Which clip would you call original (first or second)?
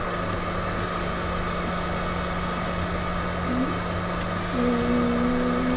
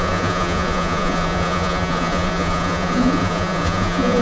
first